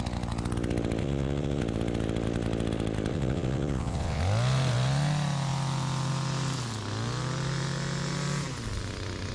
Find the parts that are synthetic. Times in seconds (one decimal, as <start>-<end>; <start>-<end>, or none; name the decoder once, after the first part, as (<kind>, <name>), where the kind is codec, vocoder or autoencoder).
1.0-1.6 (vocoder, WaveNeXt); 3.1-4.2